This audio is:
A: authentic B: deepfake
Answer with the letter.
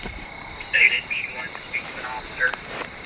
B